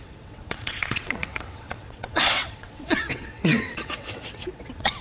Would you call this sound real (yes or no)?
no